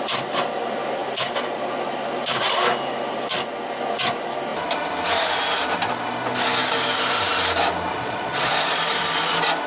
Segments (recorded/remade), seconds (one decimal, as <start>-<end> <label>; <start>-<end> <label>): 0.0-7.9 recorded; 7.9-8.8 remade; 8.8-9.7 recorded